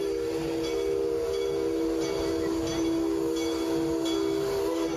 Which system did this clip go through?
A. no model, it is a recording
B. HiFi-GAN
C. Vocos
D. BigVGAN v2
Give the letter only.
A